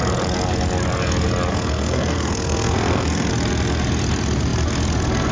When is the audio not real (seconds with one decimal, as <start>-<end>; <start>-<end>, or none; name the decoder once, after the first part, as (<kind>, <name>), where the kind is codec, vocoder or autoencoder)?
1.5-3.3 (codec, SNAC)